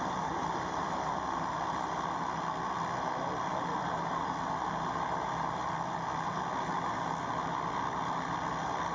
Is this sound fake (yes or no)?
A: no